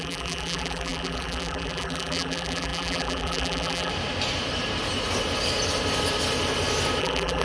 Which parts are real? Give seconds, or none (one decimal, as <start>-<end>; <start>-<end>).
3.9-7.0